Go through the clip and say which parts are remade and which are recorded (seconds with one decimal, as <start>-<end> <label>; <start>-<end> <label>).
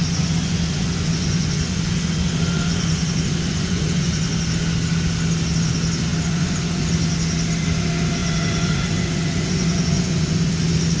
0.0-4.3 remade; 4.3-6.1 recorded; 6.1-6.9 remade; 6.9-8.2 recorded; 8.2-10.5 remade; 10.5-11.0 recorded